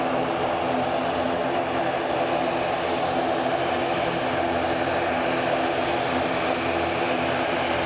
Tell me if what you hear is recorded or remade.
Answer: recorded